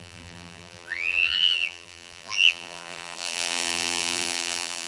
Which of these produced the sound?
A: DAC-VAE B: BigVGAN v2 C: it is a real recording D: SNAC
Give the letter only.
B